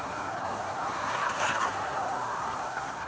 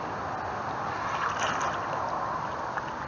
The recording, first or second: second